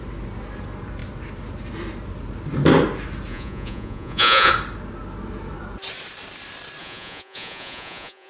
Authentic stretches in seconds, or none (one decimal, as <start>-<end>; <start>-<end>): 0.0-3.3; 4.5-6.8